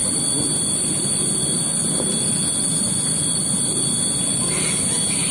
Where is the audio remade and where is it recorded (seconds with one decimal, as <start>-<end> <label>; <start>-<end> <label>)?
0.0-5.3 recorded